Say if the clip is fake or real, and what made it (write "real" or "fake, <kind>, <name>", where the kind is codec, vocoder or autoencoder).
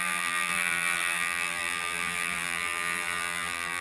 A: fake, vocoder, BigVGAN v2